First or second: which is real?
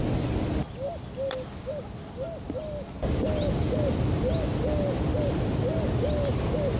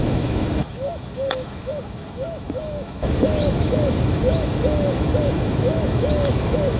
first